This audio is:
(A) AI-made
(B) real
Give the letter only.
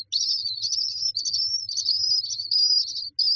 B